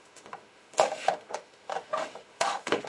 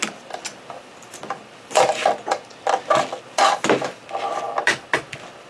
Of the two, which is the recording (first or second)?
second